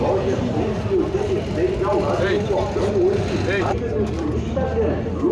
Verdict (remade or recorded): recorded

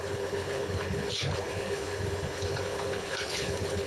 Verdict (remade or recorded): remade